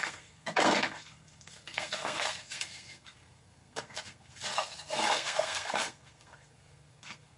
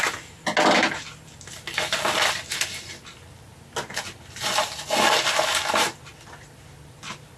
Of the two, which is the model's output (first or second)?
first